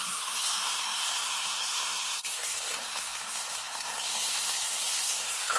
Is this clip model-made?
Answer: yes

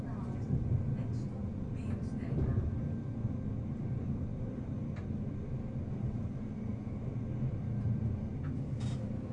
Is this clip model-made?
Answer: no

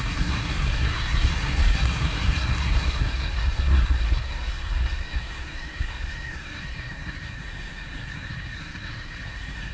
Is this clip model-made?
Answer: yes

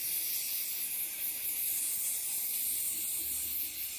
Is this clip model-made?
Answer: no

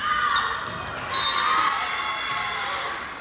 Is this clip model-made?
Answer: no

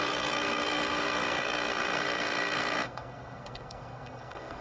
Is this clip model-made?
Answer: yes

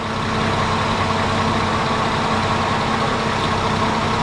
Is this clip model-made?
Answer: no